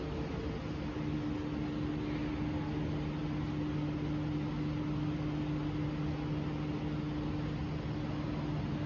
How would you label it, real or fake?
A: real